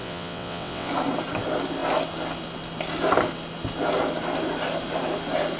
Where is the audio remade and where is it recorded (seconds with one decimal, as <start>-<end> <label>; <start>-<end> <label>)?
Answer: 0.0-0.9 remade; 0.9-5.6 recorded